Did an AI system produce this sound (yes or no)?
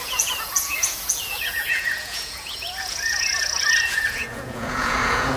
yes